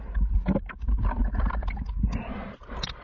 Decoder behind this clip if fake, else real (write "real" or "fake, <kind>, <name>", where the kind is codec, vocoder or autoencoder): real